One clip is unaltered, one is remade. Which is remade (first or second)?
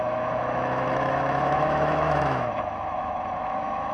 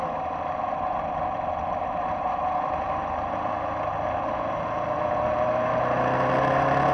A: first